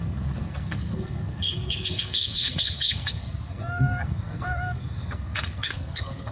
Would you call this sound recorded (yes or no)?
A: no